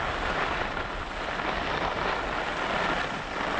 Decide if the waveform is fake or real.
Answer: real